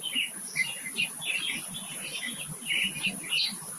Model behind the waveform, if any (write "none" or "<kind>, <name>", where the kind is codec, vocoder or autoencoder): none